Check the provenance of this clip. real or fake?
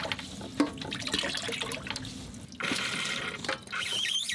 real